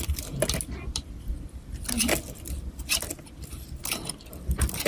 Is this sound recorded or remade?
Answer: recorded